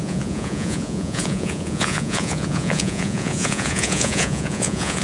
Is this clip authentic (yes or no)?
no